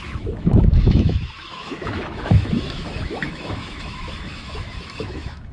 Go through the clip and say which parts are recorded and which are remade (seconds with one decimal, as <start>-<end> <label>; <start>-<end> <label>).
0.0-5.5 remade